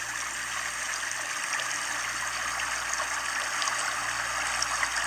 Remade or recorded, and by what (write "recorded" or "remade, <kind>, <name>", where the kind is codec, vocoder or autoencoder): recorded